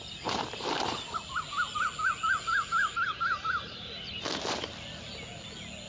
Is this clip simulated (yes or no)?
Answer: no